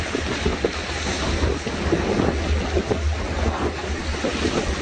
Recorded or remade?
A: recorded